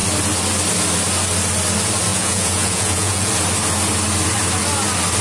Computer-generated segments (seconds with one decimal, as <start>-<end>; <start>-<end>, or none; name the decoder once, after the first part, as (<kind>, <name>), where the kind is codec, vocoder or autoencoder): 2.1-3.3 (vocoder, Vocos)